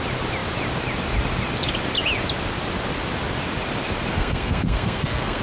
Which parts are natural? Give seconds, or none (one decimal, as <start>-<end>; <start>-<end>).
0.0-4.1